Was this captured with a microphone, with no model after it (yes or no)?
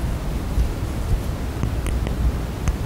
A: yes